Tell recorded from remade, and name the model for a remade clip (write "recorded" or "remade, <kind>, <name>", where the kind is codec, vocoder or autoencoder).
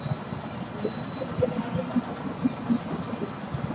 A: recorded